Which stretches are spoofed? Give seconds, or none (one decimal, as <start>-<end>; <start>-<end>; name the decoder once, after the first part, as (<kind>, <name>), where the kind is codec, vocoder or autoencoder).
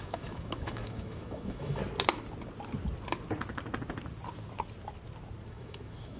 0.0-1.8 (autoencoder, DAC-VAE); 5.5-6.2